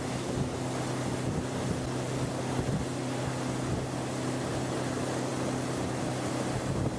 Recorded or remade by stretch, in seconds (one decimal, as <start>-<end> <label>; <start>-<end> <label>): 0.0-7.0 recorded